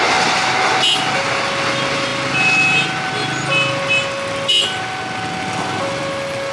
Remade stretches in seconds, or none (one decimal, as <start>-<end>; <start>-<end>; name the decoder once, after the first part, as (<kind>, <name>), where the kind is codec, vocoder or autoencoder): none